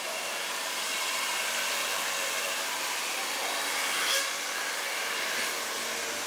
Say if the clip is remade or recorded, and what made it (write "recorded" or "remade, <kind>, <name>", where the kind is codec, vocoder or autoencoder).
remade, vocoder, BigVGAN v2